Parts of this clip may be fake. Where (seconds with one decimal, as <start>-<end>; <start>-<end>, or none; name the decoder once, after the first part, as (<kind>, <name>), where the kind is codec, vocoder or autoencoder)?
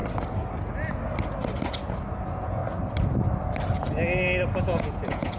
2.2-2.6 (vocoder, Vocos); 4.6-5.4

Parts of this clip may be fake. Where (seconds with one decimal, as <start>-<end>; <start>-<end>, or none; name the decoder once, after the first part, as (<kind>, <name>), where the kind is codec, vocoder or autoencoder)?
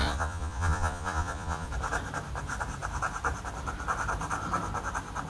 0.0-1.7 (vocoder, Vocos)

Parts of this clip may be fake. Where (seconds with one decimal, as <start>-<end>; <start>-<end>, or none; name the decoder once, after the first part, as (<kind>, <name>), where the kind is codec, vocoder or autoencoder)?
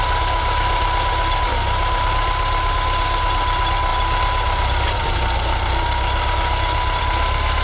none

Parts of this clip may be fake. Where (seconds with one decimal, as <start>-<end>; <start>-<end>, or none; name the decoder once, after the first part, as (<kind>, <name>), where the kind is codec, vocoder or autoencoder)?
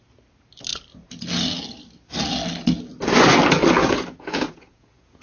3.8-5.2 (vocoder, Vocos)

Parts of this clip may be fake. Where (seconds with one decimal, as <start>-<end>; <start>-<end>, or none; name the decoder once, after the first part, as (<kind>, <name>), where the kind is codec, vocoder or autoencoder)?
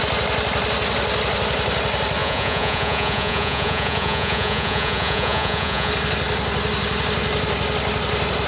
2.2-5.9 (vocoder, Vocos)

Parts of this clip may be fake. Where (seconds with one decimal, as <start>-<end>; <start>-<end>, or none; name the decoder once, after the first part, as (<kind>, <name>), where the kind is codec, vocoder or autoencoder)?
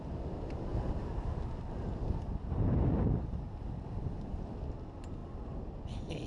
none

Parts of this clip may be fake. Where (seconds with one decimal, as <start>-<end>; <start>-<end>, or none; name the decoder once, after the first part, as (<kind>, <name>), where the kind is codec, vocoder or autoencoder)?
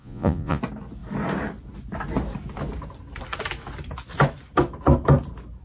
0.0-0.6 (vocoder, Vocos)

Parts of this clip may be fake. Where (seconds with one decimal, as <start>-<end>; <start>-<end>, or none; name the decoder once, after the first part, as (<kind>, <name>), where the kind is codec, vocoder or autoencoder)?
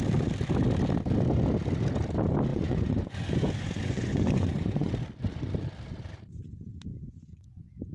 2.5-4.9 (vocoder, Vocos); 6.9-7.9